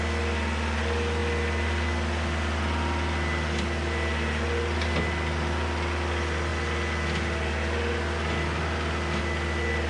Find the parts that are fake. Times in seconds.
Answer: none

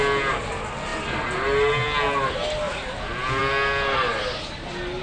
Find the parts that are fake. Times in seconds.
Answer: none

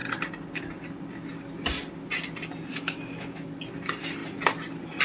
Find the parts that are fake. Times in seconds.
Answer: 2.7-3.5

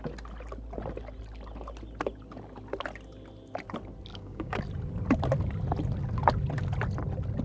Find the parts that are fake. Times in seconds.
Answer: 4.1-4.6